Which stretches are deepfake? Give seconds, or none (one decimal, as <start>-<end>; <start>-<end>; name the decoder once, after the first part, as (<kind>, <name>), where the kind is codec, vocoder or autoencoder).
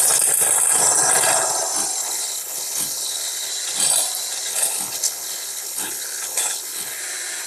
2.0-3.5 (codec, HILCodec); 4.5-7.0